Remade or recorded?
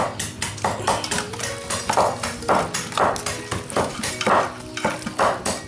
recorded